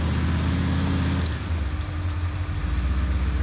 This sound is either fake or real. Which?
real